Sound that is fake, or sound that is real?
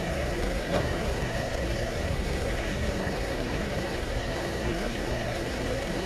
fake